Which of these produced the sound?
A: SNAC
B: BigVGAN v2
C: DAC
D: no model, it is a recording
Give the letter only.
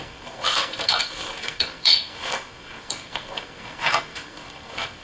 A